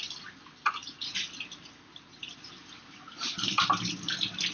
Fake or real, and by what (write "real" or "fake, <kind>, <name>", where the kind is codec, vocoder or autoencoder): real